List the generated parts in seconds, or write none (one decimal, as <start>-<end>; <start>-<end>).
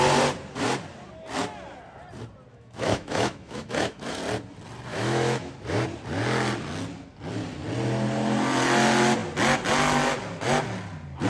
2.5-4.2; 4.9-5.5